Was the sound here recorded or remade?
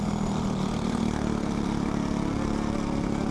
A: recorded